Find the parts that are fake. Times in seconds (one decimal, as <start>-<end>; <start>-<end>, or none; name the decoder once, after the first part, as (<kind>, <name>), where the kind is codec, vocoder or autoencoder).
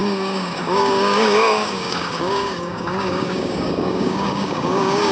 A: 0.0-5.1 (codec, DAC)